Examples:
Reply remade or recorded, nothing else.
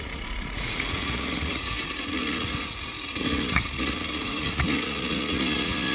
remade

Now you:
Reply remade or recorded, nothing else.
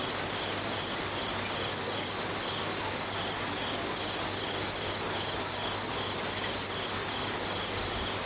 recorded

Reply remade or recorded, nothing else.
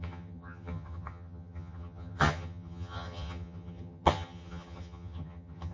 remade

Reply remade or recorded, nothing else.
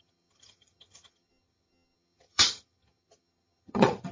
remade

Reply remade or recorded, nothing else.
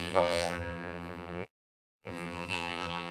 remade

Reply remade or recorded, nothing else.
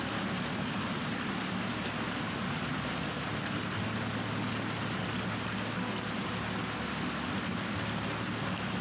recorded